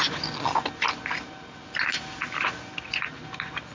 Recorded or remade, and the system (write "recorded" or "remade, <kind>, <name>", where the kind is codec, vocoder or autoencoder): recorded